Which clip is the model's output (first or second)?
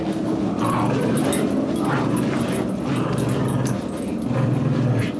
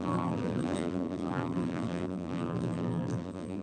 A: second